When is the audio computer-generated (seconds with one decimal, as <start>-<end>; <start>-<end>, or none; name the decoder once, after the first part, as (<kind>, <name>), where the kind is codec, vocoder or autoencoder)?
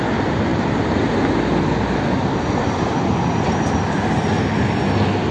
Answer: none